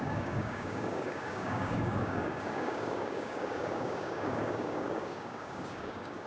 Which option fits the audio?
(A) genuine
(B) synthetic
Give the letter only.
B